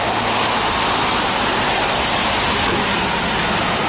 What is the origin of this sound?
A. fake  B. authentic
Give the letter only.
B